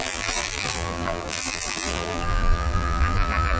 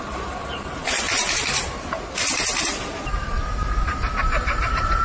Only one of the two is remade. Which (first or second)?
first